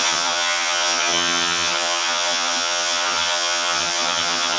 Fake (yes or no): yes